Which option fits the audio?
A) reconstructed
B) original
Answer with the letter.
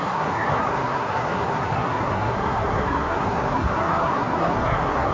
A